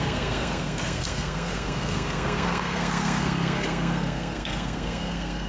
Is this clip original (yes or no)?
no